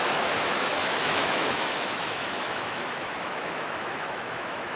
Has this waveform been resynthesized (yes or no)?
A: yes